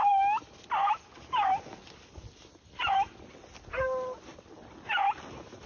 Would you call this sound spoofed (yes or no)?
no